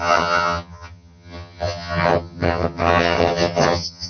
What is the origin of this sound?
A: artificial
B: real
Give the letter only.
A